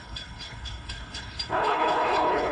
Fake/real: fake